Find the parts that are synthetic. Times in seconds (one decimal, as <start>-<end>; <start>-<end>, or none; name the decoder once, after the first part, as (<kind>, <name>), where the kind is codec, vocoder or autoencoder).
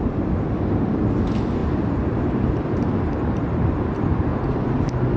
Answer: 1.6-3.7 (vocoder, BigVGAN v2)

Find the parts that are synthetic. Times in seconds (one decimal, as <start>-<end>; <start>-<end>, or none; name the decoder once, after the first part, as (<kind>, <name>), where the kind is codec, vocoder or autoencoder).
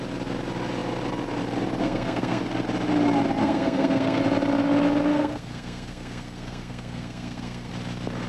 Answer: 1.8-2.4 (codec, SNAC); 3.4-4.2; 5.1-7.7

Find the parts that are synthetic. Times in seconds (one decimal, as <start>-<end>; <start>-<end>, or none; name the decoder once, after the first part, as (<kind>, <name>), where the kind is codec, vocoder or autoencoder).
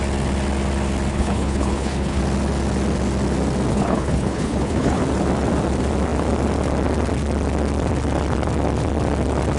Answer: 1.1-2.2 (codec, HILCodec); 3.7-5.0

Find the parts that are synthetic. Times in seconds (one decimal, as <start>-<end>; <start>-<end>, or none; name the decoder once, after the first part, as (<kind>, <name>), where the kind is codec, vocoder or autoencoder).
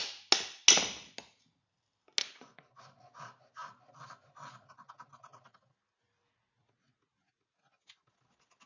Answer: 2.2-2.8 (vocoder, Vocos)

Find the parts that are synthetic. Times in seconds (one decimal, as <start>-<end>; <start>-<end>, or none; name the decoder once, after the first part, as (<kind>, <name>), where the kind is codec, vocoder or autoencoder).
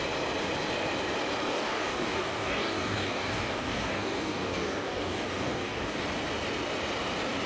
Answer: 1.5-6.0 (codec, DAC)